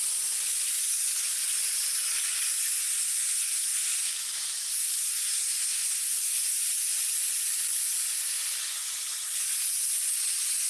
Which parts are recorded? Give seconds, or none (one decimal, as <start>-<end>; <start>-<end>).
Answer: 0.0-2.8; 4.1-5.0; 6.5-10.7